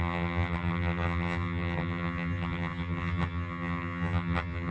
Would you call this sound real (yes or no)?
no